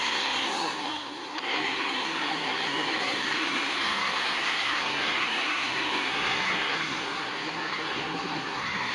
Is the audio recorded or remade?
remade